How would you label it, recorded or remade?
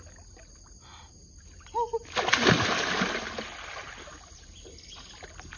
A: recorded